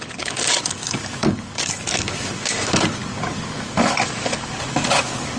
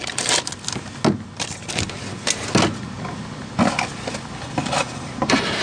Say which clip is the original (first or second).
second